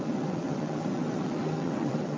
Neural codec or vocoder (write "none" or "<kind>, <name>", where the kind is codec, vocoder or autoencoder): vocoder, WaveNeXt